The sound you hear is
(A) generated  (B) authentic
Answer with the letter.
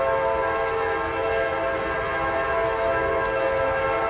B